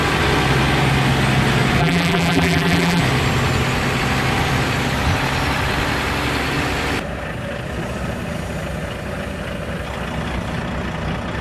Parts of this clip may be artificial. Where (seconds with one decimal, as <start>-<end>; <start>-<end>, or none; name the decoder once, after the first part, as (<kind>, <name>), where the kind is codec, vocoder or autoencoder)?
1.8-3.0 (vocoder, BigVGAN v2)